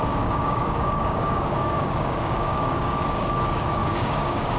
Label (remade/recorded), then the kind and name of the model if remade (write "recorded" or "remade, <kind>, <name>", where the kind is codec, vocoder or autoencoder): remade, codec, DAC